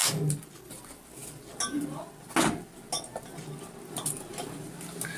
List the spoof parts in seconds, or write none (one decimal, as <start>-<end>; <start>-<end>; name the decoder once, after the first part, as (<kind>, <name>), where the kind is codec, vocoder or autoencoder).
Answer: none